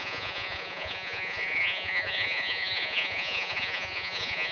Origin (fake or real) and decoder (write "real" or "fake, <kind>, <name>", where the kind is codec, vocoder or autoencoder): fake, vocoder, Vocos